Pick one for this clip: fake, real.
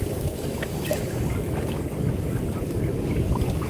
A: fake